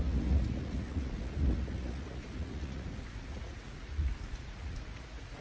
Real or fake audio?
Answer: fake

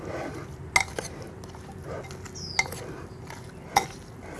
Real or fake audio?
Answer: real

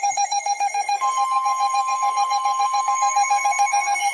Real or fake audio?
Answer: fake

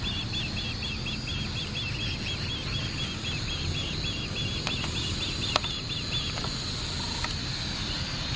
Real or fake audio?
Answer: real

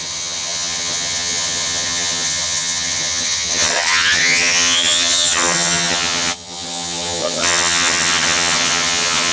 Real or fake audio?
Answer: fake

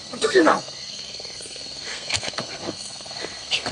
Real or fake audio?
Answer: fake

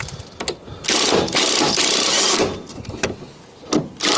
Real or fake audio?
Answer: real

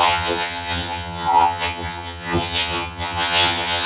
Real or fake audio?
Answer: fake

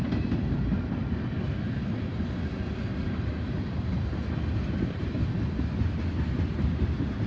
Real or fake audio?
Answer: fake